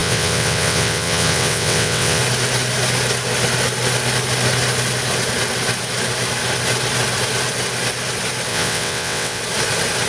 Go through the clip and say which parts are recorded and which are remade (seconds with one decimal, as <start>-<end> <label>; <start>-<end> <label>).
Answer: 0.0-2.2 remade; 2.2-8.5 recorded; 8.5-9.4 remade; 9.4-10.1 recorded